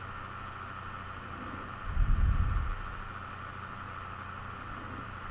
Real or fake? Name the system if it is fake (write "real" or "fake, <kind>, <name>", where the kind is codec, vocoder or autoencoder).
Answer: real